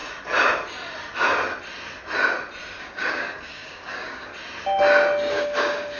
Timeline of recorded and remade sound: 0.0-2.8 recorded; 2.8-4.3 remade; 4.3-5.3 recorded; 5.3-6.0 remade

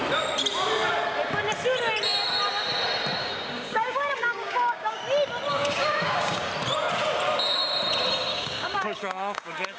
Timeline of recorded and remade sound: 0.0-3.2 recorded; 3.2-5.0 remade; 5.0-5.5 recorded; 5.5-6.5 remade; 6.5-8.3 recorded; 8.3-9.8 remade

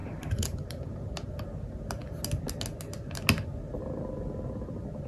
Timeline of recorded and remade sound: 0.0-1.1 remade; 1.1-5.1 recorded

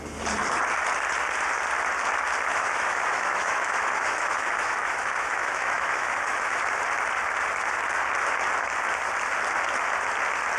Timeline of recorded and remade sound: 0.0-2.5 recorded; 2.5-6.6 remade; 6.6-10.6 recorded

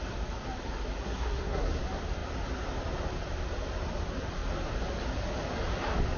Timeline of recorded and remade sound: 0.0-1.0 recorded; 1.0-1.8 remade; 1.8-6.2 recorded

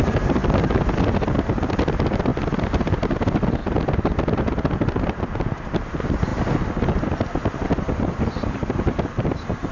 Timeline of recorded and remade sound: 0.0-9.7 recorded